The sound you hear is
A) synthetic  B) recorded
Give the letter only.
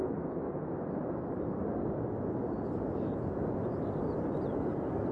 B